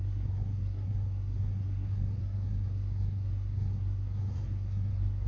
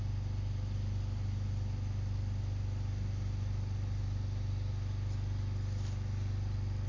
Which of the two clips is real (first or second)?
second